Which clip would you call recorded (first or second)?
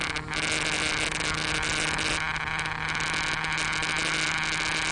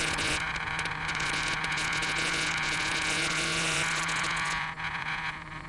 first